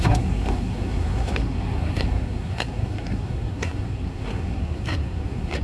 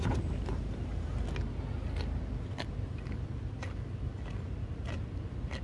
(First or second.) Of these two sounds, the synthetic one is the first